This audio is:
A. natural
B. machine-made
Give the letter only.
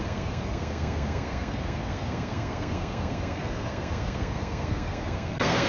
B